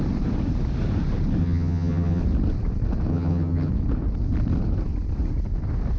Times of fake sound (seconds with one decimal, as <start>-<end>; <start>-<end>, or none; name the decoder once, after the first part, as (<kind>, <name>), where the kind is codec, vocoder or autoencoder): 1.4-2.2 (vocoder, HiFi-GAN); 3.1-3.7